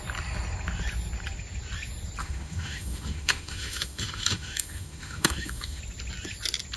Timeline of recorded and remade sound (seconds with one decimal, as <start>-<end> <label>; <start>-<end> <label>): 0.0-2.2 recorded; 2.2-5.8 remade; 5.8-6.8 recorded